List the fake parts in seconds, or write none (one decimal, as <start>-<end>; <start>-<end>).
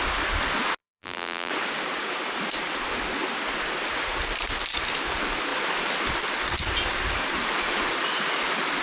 0.8-1.5